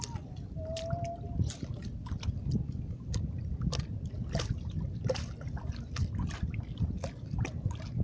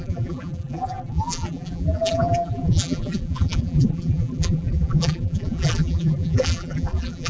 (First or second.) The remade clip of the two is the second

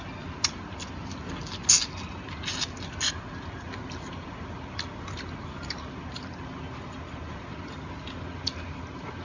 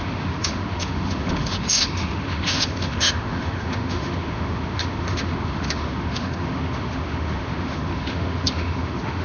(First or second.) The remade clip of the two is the second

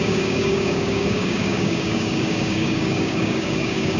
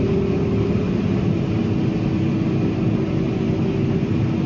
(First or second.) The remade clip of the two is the first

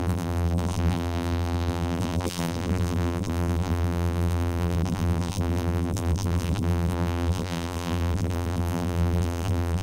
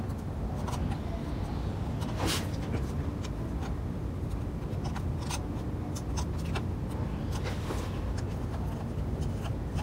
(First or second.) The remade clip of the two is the first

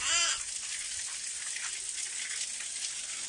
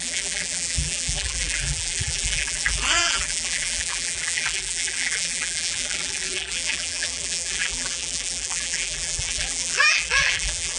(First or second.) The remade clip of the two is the second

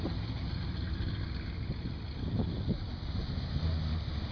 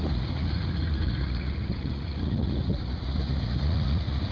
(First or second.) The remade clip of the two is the second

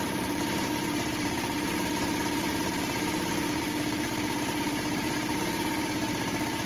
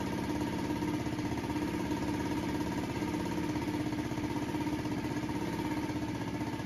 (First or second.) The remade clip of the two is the first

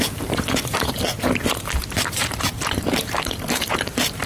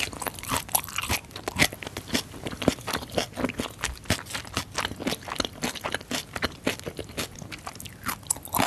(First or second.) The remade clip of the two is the first